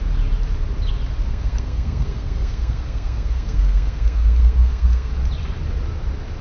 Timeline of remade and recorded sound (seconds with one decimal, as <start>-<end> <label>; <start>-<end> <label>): 0.0-1.3 recorded; 1.3-5.1 remade; 5.1-6.4 recorded